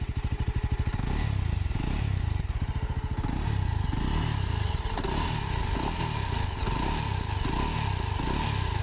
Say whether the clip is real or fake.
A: real